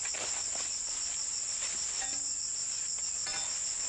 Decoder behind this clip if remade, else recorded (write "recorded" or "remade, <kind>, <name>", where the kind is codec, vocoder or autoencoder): recorded